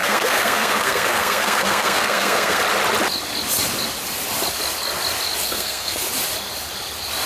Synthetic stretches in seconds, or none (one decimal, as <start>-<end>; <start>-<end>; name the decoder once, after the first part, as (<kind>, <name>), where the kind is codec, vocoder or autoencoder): 0.0-2.6 (codec, SNAC); 5.4-6.1